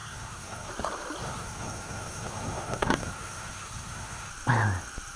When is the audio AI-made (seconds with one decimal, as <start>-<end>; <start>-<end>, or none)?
0.0-0.7; 1.2-4.3